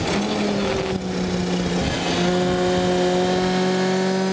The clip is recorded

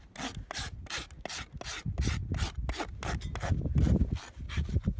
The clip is recorded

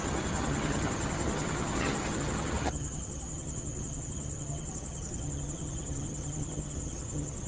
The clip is remade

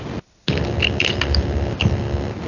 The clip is recorded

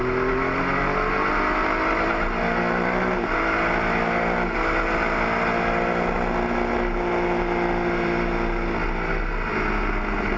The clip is recorded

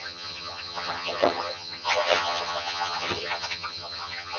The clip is remade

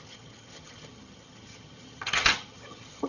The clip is remade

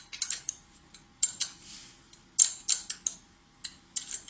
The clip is recorded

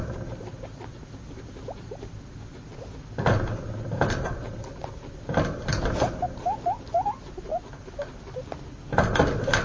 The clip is recorded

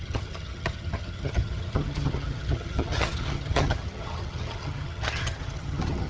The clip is remade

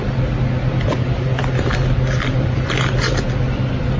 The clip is recorded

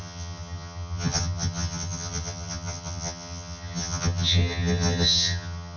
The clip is remade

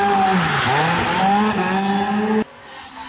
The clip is recorded